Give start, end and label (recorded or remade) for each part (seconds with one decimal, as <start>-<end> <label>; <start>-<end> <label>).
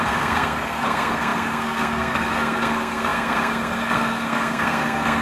0.0-5.2 remade